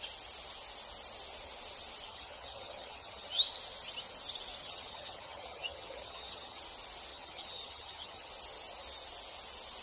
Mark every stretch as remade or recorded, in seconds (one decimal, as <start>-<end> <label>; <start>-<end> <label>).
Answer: 0.0-2.1 recorded; 2.1-3.4 remade; 3.4-4.6 recorded; 4.6-6.6 remade; 6.6-7.1 recorded; 7.1-8.3 remade; 8.3-9.8 recorded